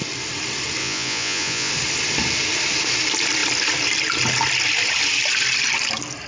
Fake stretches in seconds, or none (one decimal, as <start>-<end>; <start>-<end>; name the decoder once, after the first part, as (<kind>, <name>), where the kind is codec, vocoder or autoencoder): 0.8-1.7 (vocoder, Vocos)